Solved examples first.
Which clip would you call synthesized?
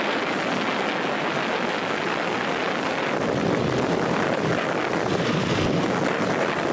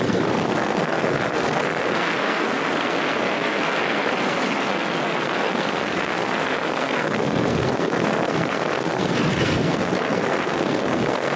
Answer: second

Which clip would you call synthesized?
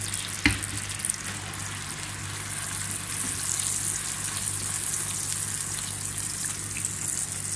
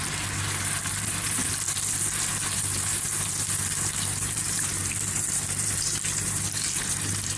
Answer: second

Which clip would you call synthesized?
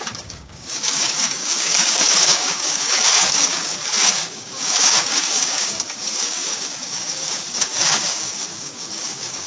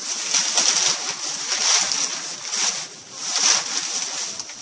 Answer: first